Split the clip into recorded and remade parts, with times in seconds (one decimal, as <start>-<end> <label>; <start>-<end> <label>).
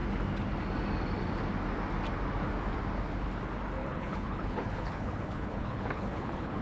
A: 0.0-3.8 recorded; 3.8-6.6 remade